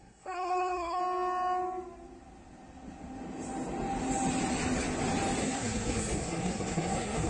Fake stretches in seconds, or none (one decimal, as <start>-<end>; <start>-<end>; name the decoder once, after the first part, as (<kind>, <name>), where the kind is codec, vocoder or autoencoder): 0.0-1.0 (codec, SNAC); 5.4-7.3